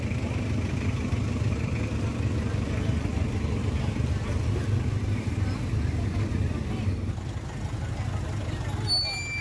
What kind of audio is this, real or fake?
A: real